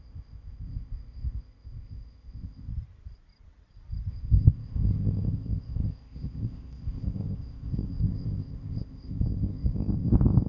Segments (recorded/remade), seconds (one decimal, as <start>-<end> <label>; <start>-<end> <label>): 0.0-2.7 remade; 2.7-4.1 recorded; 4.1-10.5 remade